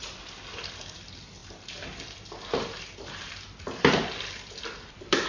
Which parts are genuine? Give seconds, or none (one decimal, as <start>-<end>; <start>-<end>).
0.0-5.3